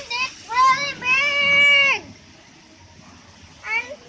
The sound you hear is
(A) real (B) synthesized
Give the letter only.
A